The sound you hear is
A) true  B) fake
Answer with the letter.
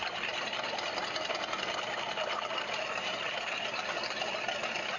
A